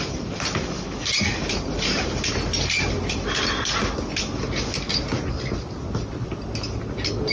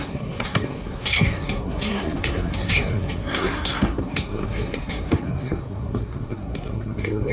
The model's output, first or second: second